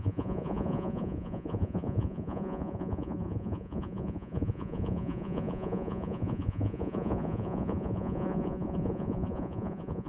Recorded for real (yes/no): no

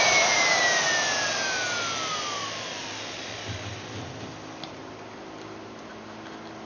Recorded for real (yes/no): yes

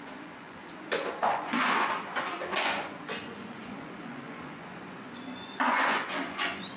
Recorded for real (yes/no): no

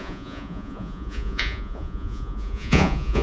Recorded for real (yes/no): no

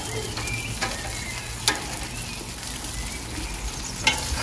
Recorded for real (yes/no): yes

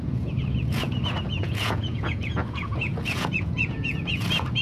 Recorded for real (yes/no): no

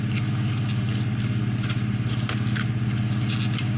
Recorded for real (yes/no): yes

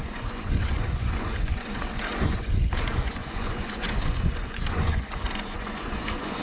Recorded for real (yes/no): no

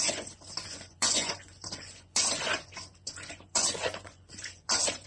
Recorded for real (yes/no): no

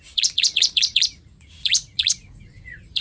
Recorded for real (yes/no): no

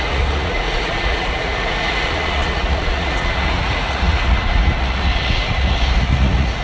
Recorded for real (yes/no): no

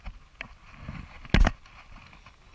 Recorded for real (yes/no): yes